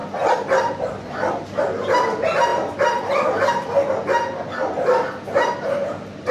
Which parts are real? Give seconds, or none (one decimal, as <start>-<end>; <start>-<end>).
0.0-6.3